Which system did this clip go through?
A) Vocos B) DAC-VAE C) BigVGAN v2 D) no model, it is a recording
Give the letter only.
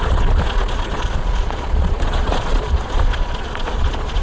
A